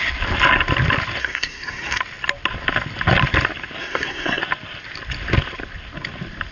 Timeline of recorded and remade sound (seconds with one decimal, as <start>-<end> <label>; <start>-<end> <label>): 0.0-1.2 recorded; 1.2-2.0 remade; 2.0-3.8 recorded; 3.8-4.4 remade; 4.4-6.5 recorded